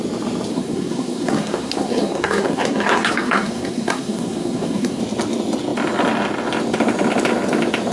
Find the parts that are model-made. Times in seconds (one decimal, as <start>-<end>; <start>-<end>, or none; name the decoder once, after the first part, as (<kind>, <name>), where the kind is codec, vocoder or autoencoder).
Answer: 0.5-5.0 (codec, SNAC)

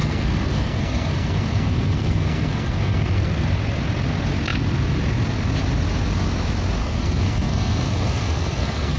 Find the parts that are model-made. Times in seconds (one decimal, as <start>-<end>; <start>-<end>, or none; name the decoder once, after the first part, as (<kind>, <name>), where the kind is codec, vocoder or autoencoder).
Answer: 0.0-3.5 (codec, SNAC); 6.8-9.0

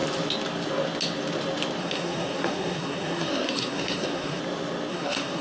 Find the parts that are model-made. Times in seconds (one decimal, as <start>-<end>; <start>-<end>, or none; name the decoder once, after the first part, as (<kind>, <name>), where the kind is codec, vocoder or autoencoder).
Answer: 1.8-4.4 (codec, SNAC); 4.9-5.4

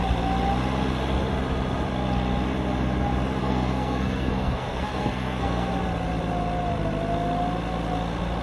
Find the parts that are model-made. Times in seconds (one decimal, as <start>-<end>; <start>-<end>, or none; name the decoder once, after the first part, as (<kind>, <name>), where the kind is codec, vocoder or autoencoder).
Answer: 3.4-5.7 (codec, SNAC)

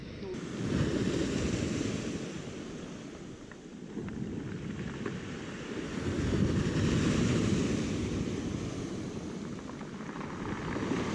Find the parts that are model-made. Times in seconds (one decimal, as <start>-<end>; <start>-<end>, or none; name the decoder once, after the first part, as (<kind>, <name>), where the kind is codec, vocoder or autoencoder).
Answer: none

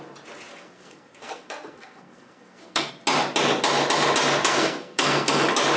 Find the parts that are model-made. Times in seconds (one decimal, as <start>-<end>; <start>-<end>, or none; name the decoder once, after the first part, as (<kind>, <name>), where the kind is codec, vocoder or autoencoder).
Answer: 0.5-2.9 (codec, SNAC); 4.4-5.3

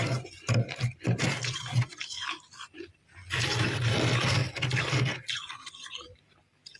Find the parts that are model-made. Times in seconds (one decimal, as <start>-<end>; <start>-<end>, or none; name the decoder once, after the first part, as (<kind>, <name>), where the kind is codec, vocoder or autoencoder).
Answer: none